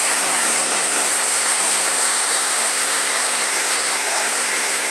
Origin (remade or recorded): remade